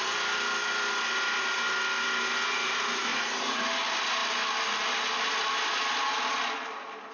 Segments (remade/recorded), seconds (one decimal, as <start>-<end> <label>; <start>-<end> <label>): 0.0-3.1 recorded; 3.1-3.6 remade; 3.6-7.1 recorded